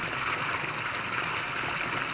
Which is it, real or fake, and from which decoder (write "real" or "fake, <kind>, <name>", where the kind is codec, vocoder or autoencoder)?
real